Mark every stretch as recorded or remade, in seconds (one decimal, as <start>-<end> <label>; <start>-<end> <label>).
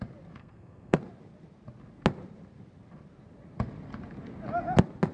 0.0-0.4 recorded; 0.4-1.0 remade; 1.0-5.1 recorded